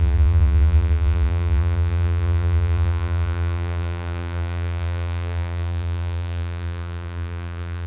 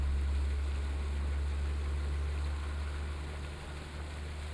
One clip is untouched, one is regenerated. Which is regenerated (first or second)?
first